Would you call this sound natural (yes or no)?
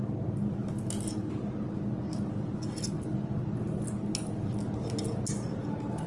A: yes